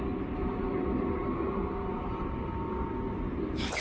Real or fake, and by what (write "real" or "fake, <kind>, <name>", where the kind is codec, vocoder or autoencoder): real